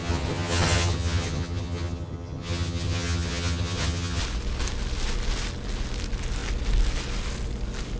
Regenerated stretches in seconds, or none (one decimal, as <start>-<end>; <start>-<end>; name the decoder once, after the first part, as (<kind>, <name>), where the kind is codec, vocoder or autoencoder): 0.0-4.2 (vocoder, HiFi-GAN)